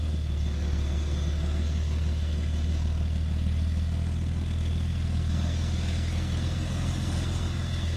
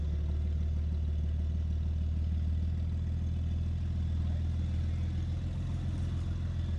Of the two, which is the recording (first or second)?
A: second